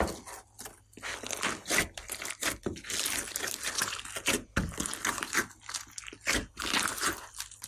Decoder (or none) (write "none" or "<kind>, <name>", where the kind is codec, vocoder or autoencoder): none